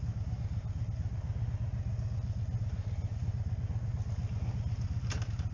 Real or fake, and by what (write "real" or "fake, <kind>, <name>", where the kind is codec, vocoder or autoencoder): real